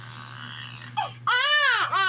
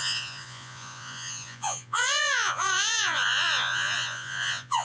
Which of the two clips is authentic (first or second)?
first